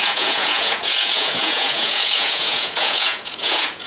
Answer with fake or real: fake